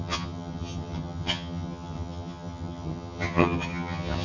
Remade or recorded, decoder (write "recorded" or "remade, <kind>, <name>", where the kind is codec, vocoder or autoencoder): remade, vocoder, HiFi-GAN